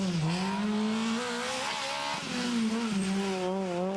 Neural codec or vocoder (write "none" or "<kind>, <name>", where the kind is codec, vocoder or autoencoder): none